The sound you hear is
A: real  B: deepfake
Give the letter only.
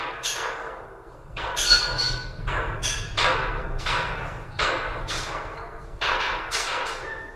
B